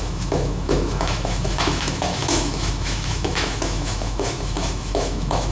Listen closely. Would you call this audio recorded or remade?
remade